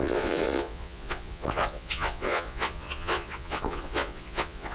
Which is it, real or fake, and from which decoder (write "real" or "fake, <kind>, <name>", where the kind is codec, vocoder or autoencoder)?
fake, vocoder, Vocos